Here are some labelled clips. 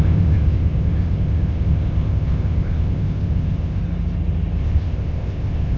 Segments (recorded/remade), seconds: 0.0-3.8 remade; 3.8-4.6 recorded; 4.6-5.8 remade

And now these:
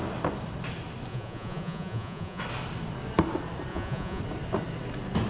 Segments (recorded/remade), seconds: 0.0-1.1 recorded; 1.1-2.4 remade; 2.4-3.7 recorded; 3.7-4.2 remade; 4.2-5.3 recorded

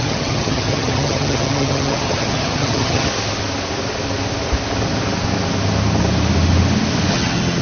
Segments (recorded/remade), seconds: 0.0-3.1 remade; 3.1-7.1 recorded; 7.1-7.6 remade